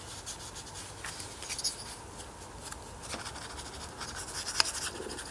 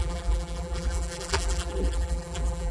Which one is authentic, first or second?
first